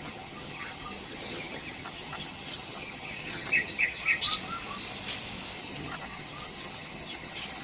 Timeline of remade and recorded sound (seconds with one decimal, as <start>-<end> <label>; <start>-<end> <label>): 0.0-4.3 remade; 4.3-5.6 recorded; 5.6-7.6 remade